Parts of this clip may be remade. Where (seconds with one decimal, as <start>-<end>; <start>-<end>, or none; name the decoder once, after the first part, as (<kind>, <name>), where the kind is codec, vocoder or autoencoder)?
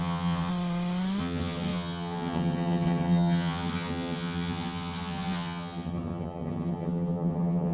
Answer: 0.0-0.5 (vocoder, HiFi-GAN); 1.2-7.7